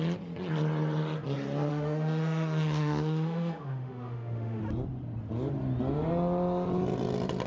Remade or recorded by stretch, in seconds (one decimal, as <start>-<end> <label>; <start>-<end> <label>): 0.0-1.7 recorded; 1.7-4.6 remade; 4.6-7.5 recorded